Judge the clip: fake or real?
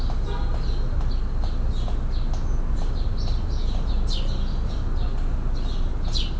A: real